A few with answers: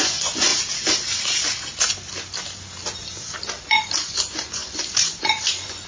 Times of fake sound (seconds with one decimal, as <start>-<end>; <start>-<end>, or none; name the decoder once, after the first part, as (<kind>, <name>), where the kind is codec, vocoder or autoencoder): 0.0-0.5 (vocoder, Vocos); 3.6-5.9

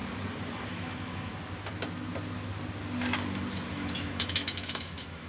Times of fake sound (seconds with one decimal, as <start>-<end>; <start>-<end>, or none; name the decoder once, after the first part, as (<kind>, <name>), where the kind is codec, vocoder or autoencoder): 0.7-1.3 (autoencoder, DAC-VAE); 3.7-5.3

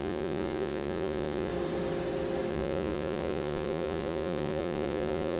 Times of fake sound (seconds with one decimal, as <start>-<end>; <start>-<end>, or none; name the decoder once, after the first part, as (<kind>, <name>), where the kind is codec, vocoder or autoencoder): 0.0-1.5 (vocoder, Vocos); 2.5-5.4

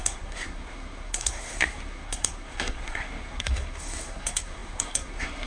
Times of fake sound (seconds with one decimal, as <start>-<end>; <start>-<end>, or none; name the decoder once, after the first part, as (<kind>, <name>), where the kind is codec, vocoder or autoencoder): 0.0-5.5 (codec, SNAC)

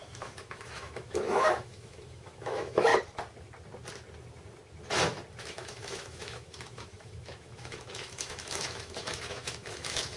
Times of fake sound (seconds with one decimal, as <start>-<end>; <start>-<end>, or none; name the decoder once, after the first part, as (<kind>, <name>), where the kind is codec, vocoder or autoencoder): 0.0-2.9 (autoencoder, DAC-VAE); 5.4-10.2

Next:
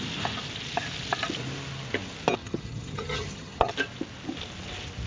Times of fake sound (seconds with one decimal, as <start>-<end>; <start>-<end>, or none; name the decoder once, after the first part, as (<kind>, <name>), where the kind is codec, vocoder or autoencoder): 2.4-3.7 (vocoder, HiFi-GAN)

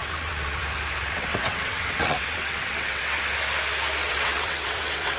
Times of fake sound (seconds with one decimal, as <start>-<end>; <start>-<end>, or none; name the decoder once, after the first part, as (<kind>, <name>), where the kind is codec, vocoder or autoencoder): 0.0-0.6 (vocoder, WaveNeXt); 1.0-3.2; 4.0-5.2

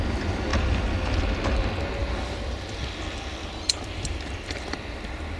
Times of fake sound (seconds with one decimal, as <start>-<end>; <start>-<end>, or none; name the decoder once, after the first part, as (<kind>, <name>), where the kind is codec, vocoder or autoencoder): 0.5-1.2 (vocoder, BigVGAN v2); 2.0-5.4